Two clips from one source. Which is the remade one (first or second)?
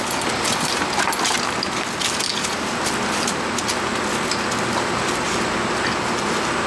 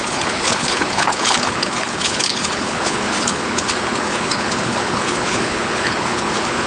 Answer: second